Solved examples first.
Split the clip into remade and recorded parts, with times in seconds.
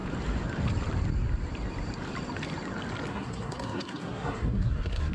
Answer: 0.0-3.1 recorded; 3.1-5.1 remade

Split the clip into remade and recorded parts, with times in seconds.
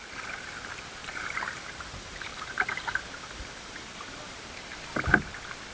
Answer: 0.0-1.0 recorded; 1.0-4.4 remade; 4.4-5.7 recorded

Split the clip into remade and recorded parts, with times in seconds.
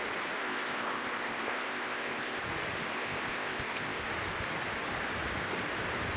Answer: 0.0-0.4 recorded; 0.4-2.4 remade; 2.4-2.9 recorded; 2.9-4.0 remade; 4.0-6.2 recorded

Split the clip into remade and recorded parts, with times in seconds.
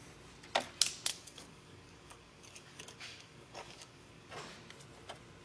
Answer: 0.0-1.1 recorded; 1.1-4.3 remade; 4.3-5.4 recorded